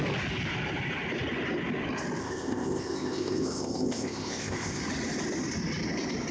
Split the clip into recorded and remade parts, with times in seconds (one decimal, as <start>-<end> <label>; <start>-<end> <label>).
0.0-2.2 recorded; 2.2-4.8 remade; 4.8-6.3 recorded